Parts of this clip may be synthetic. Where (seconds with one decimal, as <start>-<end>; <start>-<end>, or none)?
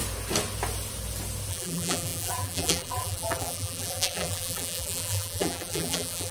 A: 1.5-6.3